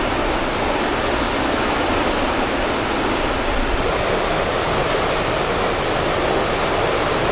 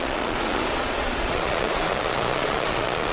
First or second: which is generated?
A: second